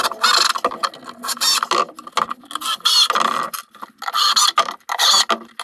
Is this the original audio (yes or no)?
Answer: yes